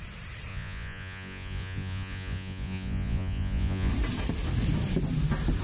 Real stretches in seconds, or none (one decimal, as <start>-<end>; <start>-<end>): 0.0-0.5; 3.9-5.6

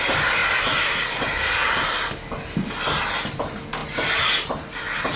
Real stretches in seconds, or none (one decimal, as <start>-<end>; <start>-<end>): 0.0-5.2

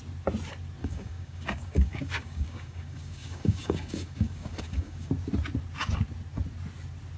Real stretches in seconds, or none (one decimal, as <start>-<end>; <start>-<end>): 0.0-0.8; 5.1-7.2

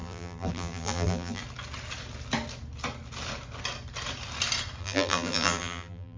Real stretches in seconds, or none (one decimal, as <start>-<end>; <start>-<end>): 1.4-4.8